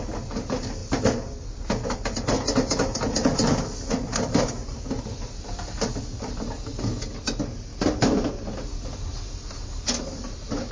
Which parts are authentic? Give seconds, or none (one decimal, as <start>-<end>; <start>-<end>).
0.0-10.7